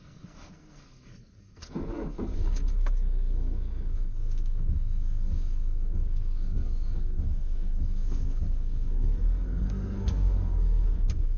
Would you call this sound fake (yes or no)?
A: yes